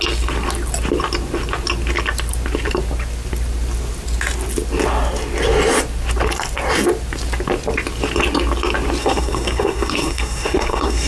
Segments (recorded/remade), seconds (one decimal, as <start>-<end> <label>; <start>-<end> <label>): 0.0-9.0 recorded; 9.0-11.1 remade